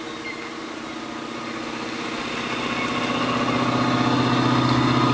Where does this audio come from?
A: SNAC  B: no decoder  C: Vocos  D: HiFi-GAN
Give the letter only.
B